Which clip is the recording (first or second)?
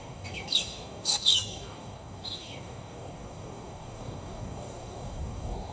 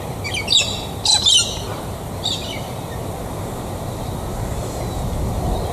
second